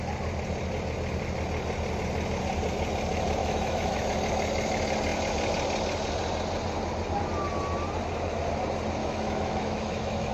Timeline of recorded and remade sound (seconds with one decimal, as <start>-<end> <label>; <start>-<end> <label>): 0.0-3.4 recorded; 3.4-4.1 remade; 4.1-9.0 recorded; 9.0-10.3 remade